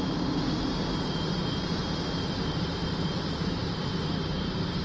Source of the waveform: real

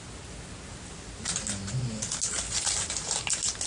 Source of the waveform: real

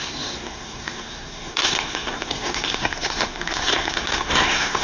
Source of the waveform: fake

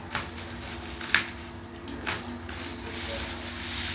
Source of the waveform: real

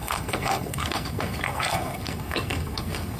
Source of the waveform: fake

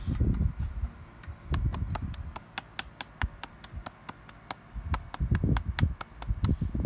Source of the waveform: real